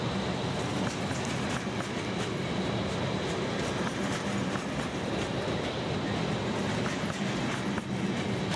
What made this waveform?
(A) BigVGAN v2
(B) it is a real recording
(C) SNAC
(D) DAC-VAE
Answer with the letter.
B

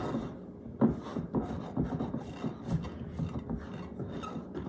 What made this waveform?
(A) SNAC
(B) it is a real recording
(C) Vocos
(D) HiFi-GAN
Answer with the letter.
B